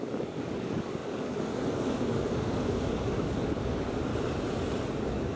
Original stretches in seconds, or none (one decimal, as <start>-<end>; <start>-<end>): 4.1-5.0